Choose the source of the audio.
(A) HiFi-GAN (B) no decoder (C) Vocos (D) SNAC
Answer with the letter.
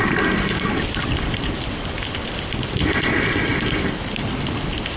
B